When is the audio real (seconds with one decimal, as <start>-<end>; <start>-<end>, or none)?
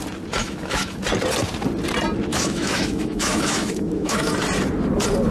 0.0-0.4; 1.0-2.3; 4.3-5.3